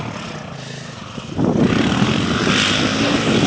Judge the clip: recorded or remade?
recorded